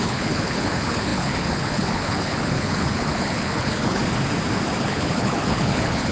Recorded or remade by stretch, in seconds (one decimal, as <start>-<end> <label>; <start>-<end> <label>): 0.0-4.0 remade; 4.0-4.8 recorded; 4.8-6.1 remade